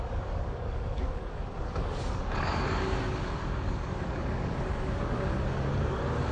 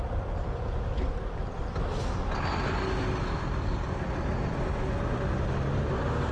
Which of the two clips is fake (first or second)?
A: first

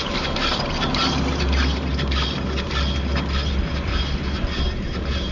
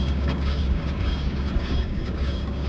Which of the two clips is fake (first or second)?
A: second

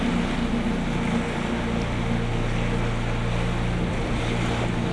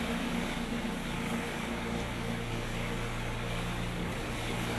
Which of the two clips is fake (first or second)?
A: second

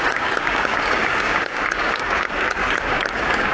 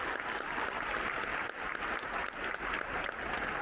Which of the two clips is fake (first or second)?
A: first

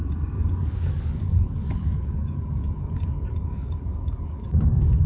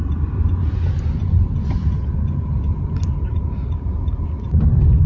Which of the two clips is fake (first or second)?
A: first